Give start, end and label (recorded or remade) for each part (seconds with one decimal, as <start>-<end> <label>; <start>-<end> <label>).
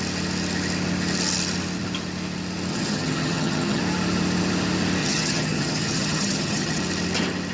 0.0-2.7 recorded; 2.7-3.8 remade; 3.8-5.0 recorded; 5.0-6.8 remade; 6.8-7.5 recorded